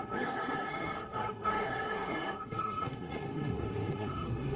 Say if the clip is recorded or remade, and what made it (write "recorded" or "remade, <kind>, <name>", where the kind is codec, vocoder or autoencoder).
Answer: remade, codec, SNAC